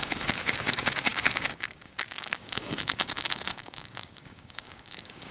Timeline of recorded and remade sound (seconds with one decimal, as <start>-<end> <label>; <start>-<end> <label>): 0.0-5.3 remade